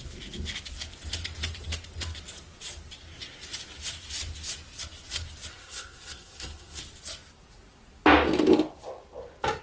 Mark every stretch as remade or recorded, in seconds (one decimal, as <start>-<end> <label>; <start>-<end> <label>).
0.0-5.5 recorded; 5.5-6.8 remade; 6.8-9.6 recorded